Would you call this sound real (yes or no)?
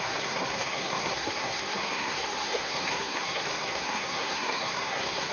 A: no